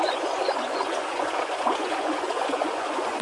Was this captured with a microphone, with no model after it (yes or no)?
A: no